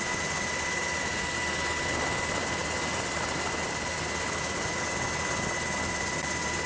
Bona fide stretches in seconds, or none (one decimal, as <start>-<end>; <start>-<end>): 0.0-6.7

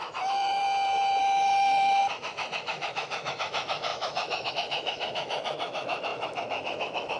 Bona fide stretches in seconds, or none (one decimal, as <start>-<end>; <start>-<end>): 0.6-1.2

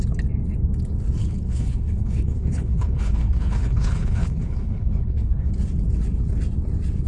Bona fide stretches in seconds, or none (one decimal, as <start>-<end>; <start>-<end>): 0.0-1.2; 5.5-7.1

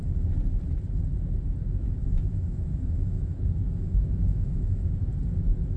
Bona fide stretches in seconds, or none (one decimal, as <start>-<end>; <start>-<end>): 0.0-1.6; 5.1-5.8